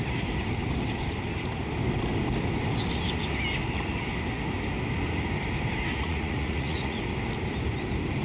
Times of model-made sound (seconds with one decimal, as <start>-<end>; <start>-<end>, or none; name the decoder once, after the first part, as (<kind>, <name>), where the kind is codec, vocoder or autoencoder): 5.9-7.0 (vocoder, Vocos)